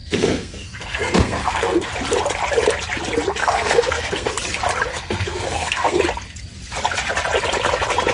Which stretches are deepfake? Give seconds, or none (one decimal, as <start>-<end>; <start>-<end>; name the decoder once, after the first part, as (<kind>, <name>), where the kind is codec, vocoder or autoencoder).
0.0-1.9 (codec, SNAC); 3.4-4.3; 4.9-6.0